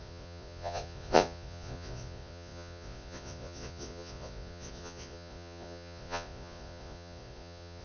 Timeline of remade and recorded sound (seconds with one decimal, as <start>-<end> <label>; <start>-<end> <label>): 0.0-7.8 remade